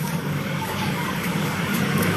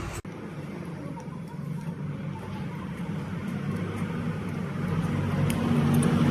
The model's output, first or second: first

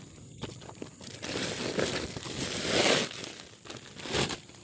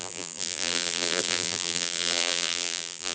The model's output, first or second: second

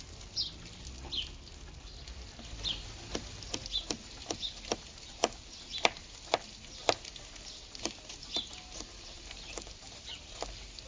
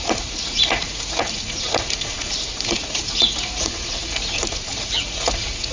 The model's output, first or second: second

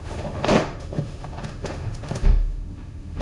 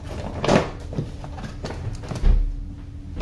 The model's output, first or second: first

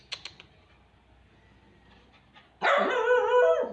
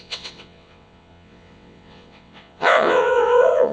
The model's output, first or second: second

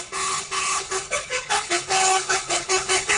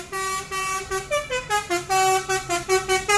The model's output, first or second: first